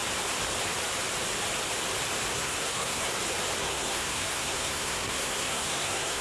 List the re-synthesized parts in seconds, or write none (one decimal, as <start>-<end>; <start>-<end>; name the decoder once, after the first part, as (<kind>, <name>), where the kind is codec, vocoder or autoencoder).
2.3-3.1 (codec, SNAC); 3.6-6.2